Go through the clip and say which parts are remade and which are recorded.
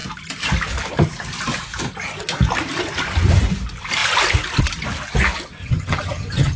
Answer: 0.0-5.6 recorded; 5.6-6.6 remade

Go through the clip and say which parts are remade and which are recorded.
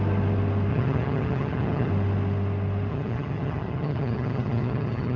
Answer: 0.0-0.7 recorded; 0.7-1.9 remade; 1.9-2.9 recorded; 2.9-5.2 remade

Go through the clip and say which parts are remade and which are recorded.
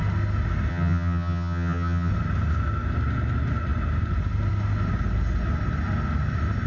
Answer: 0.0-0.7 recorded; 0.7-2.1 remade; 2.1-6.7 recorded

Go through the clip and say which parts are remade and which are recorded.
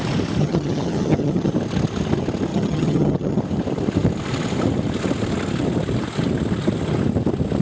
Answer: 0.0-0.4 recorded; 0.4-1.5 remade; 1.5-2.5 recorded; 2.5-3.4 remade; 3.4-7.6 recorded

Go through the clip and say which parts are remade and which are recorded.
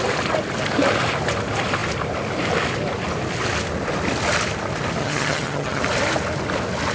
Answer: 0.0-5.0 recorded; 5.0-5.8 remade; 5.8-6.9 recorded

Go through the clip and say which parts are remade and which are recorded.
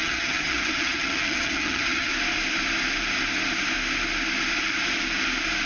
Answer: 0.0-2.1 remade; 2.1-5.7 recorded